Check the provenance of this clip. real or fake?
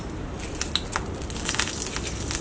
real